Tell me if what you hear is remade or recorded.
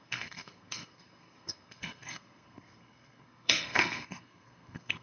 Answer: remade